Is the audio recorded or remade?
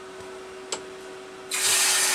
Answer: recorded